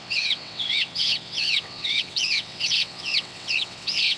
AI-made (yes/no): yes